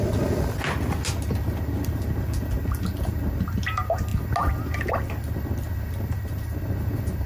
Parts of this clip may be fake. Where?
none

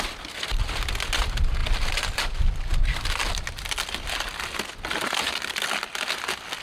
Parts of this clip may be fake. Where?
none

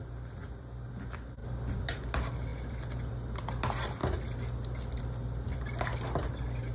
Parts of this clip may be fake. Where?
0.4-0.9; 2.5-3.1

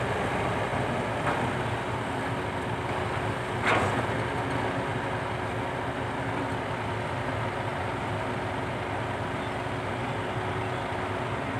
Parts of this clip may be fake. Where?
none

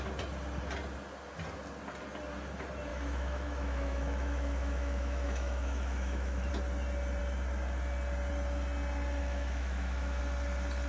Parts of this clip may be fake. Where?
2.9-6.5; 9.2-10.2